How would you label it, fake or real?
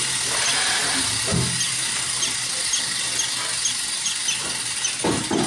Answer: real